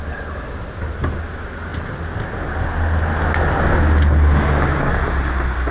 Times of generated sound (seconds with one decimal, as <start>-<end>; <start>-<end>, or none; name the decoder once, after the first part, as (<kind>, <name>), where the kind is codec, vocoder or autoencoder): none